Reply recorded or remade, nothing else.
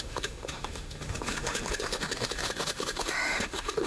remade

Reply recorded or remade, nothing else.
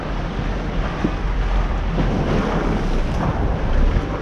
recorded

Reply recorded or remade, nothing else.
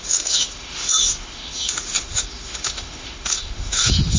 remade